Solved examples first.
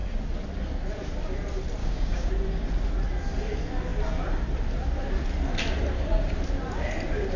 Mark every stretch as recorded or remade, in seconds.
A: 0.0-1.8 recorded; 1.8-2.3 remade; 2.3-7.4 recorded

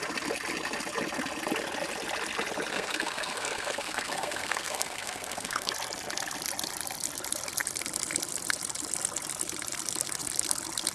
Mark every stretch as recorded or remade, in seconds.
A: 0.0-2.7 recorded; 2.7-5.7 remade; 5.7-10.9 recorded

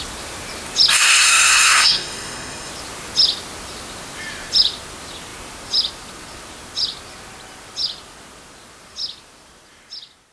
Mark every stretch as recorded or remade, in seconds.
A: 0.0-0.9 recorded; 0.9-2.7 remade; 2.7-10.3 recorded

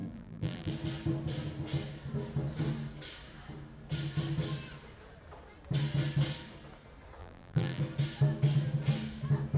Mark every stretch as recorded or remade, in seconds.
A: 0.0-0.7 remade; 0.7-7.2 recorded; 7.2-7.8 remade; 7.8-9.6 recorded

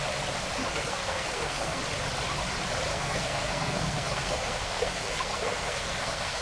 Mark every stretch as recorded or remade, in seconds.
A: 0.0-0.6 recorded; 0.6-1.8 remade; 1.8-2.9 recorded; 2.9-6.4 remade